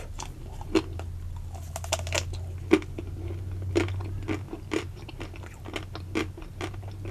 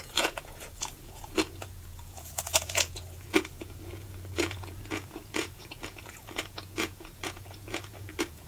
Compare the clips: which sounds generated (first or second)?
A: second